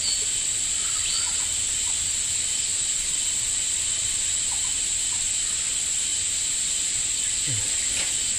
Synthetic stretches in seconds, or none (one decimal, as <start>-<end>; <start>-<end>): 2.7-5.4; 6.1-8.4